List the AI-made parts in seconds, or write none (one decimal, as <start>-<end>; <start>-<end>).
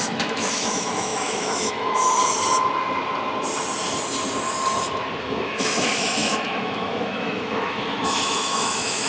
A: 0.0-2.2; 5.2-9.1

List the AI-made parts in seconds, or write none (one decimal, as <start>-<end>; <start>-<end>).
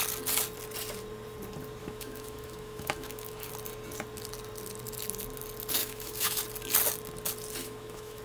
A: 1.8-3.5; 5.8-6.4; 7.6-8.2